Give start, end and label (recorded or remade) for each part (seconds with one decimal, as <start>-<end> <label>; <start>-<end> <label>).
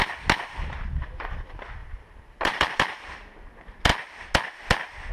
0.0-1.8 recorded; 1.8-2.6 remade; 2.6-5.1 recorded